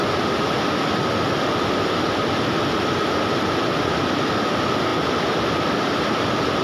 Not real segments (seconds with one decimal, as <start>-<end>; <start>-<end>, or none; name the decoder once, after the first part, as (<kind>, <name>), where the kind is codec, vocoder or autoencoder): none

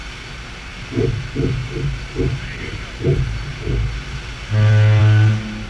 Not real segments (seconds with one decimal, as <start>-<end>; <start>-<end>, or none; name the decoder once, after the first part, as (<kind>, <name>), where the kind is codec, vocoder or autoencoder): none